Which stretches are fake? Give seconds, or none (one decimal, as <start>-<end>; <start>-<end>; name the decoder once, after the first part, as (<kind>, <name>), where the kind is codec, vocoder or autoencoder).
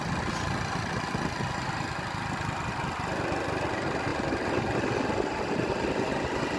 none